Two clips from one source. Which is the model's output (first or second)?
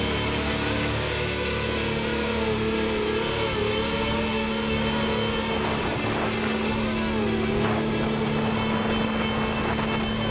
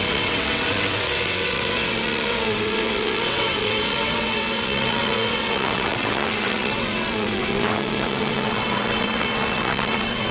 second